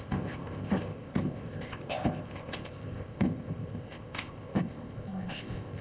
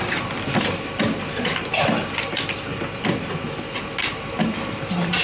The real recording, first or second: second